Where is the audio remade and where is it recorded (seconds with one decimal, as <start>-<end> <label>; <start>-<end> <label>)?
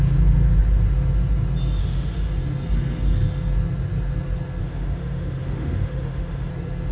0.0-1.8 recorded; 1.8-2.3 remade; 2.3-4.6 recorded; 4.6-6.5 remade; 6.5-6.9 recorded